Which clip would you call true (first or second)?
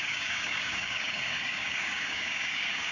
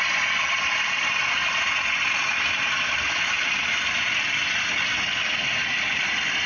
second